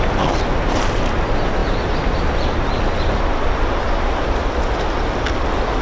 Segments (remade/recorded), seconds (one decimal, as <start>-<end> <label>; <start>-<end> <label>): 0.0-5.8 recorded